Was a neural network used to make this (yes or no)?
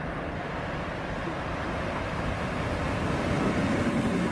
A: no